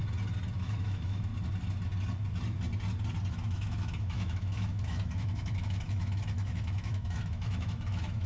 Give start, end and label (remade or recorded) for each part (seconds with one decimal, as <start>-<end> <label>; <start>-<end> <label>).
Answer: 0.0-0.6 recorded; 0.6-1.3 remade; 1.3-3.3 recorded; 3.3-8.3 remade